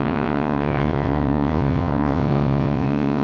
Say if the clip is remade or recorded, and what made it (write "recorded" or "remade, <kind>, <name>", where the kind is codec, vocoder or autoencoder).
remade, vocoder, WaveNeXt